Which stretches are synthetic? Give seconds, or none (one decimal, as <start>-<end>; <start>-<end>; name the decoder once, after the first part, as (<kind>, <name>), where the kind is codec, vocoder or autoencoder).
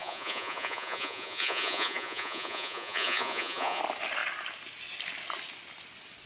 0.0-3.8 (vocoder, Vocos)